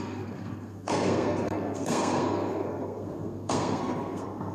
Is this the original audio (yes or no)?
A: no